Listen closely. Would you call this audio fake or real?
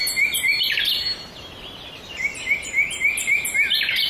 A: real